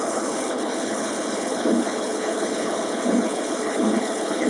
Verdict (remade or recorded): remade